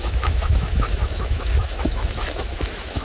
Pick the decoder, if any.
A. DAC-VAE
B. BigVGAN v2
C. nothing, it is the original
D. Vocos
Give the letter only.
A